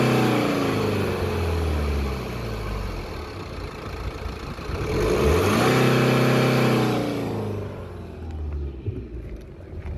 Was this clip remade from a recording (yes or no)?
no